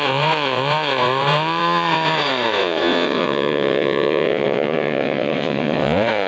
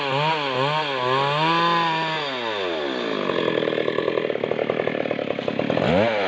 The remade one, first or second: first